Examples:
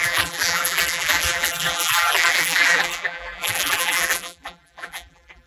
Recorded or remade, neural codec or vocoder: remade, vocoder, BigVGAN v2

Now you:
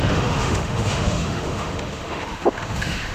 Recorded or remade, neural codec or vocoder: remade, autoencoder, DAC-VAE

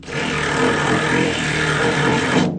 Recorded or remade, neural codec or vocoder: remade, vocoder, BigVGAN v2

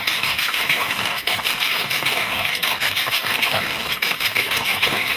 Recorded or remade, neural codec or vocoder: remade, codec, DAC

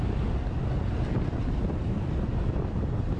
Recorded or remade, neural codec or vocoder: recorded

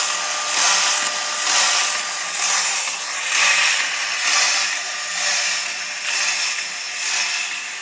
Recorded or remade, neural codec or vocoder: recorded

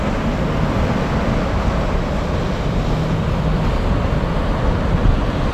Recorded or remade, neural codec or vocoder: recorded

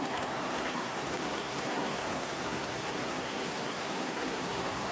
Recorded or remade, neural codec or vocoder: remade, codec, SNAC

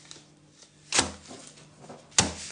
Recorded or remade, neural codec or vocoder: recorded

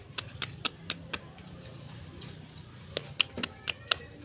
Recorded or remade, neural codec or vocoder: recorded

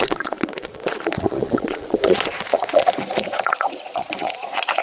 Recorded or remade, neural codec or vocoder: remade, vocoder, Vocos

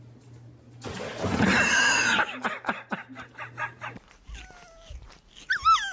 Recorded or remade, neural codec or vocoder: recorded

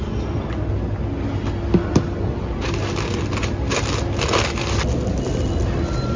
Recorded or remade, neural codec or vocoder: recorded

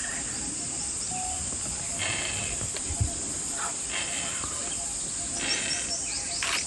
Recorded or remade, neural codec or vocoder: remade, vocoder, BigVGAN v2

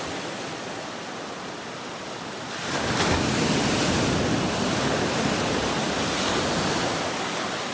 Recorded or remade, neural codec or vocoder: recorded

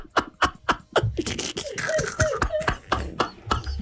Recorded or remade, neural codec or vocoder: recorded